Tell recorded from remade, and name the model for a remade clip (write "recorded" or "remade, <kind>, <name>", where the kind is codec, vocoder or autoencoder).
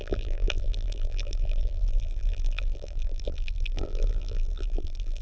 remade, vocoder, BigVGAN v2